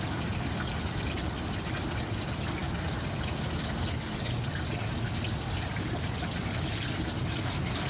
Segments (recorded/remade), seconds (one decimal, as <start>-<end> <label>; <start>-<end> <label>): 0.0-7.9 recorded